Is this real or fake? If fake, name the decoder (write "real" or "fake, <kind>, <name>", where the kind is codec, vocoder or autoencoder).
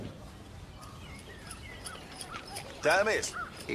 fake, vocoder, BigVGAN v2